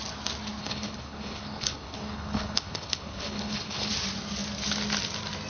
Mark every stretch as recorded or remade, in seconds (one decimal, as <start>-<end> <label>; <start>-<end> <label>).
0.0-0.6 recorded; 0.6-3.9 remade; 3.9-5.5 recorded